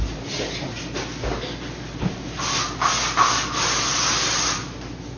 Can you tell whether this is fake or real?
real